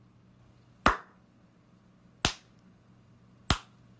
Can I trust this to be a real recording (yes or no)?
yes